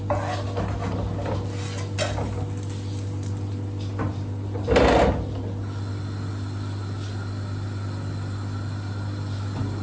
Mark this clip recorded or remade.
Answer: recorded